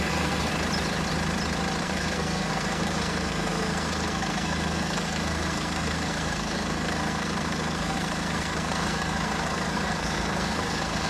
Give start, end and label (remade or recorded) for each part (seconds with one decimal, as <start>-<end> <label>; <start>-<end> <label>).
0.0-0.5 remade; 0.5-1.8 recorded; 1.8-11.1 remade